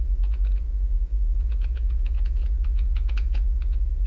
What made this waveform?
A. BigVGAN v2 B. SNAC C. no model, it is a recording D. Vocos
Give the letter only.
D